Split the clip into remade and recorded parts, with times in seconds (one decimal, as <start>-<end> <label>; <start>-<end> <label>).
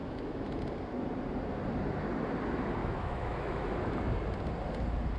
0.0-0.6 remade; 0.6-2.8 recorded; 2.8-3.9 remade; 3.9-5.2 recorded